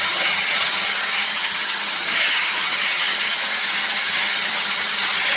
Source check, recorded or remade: remade